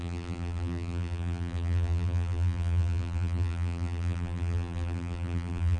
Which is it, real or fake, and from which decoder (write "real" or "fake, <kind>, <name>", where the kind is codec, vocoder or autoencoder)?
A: fake, vocoder, BigVGAN v2